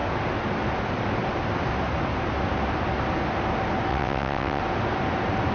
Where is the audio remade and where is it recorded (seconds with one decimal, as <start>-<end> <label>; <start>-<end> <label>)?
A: 0.0-3.9 recorded; 3.9-4.6 remade; 4.6-5.5 recorded